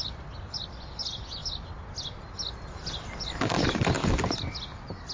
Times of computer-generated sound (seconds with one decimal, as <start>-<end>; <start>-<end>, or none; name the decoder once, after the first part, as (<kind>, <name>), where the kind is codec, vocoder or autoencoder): none